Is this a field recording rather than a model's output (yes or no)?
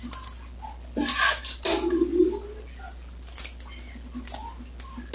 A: yes